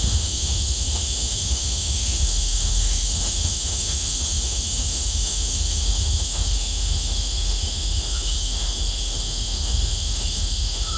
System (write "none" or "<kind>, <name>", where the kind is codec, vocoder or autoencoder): autoencoder, DAC-VAE